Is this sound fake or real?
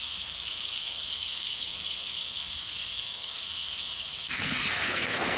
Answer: fake